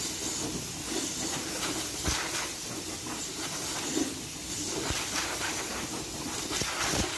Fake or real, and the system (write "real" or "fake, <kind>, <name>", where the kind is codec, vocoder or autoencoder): real